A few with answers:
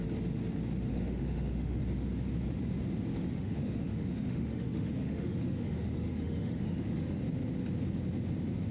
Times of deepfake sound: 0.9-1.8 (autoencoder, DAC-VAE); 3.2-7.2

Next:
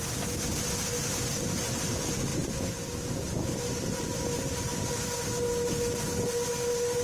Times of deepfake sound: none

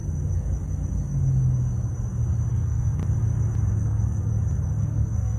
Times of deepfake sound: 2.5-3.0 (codec, SNAC); 3.7-4.3; 4.8-5.4

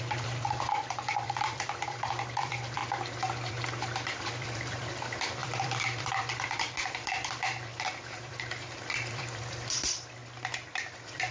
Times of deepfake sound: 0.0-2.8 (vocoder, BigVGAN v2); 3.5-10.2; 10.9-11.3

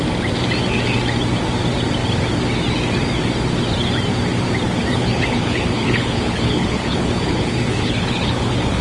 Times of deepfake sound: 4.9-8.8 (codec, HILCodec)

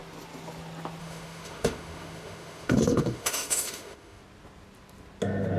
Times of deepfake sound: 1.0-4.2 (autoencoder, DAC-VAE)

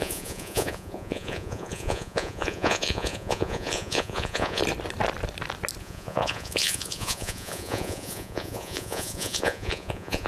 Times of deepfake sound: 0.0-4.6 (vocoder, Vocos); 5.8-10.3